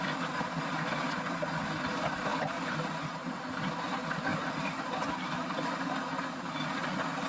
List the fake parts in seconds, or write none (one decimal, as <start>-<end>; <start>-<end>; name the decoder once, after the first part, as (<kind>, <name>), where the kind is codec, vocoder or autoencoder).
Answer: 2.3-3.4 (vocoder, BigVGAN v2); 4.3-5.7